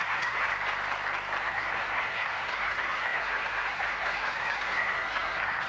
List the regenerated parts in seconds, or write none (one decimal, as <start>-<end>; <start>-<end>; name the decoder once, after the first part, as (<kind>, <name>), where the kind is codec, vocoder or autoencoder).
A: 0.0-0.5 (codec, SNAC); 1.4-5.7